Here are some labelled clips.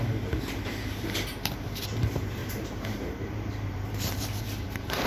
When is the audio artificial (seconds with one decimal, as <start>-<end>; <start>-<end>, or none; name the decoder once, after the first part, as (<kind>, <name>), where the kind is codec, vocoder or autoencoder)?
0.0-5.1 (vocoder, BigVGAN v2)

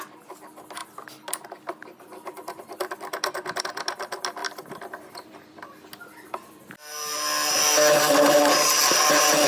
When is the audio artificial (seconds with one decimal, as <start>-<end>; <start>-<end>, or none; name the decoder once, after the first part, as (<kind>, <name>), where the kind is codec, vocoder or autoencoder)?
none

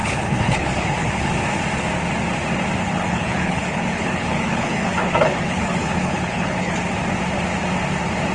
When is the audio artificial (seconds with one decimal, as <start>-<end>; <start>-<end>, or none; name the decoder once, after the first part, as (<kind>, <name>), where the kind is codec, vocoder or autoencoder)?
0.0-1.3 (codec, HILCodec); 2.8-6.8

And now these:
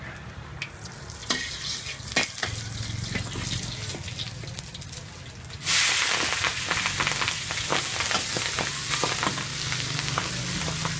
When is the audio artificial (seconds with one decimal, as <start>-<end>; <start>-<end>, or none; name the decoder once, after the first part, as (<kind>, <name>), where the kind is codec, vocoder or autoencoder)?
9.5-10.4 (codec, DAC)

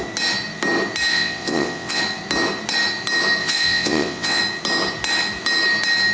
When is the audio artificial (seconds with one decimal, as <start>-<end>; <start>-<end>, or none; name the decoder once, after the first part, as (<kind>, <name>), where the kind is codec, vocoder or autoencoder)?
1.1-2.0 (vocoder, WaveNeXt); 3.4-4.4

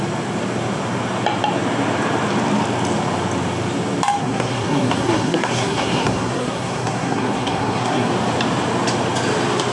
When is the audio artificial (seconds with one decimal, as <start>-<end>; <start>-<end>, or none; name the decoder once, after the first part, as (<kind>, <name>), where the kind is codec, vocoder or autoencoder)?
4.2-8.1 (codec, SNAC)

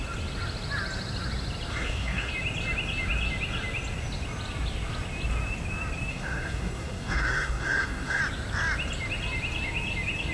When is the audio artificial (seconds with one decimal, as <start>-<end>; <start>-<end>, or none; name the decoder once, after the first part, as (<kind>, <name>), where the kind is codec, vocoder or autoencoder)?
1.7-2.3 (codec, SNAC); 6.1-8.2

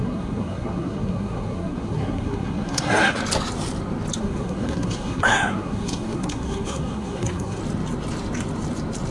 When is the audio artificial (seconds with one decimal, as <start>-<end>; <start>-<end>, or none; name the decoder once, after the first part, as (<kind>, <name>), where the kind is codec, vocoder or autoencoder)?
0.0-3.2 (codec, SNAC); 4.2-7.6